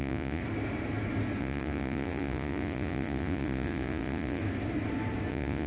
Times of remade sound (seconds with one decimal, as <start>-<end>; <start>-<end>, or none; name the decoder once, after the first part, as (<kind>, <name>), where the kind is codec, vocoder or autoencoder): 0.0-0.4 (vocoder, Vocos); 1.4-4.4; 5.3-5.7